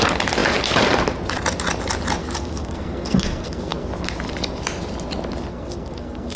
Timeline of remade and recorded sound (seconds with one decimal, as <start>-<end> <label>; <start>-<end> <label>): 0.0-2.2 recorded; 2.2-3.9 remade; 3.9-5.5 recorded; 5.5-6.4 remade